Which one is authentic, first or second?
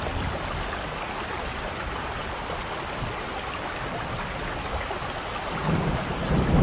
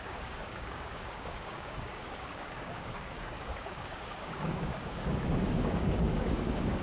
first